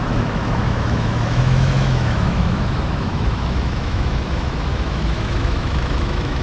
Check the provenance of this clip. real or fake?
fake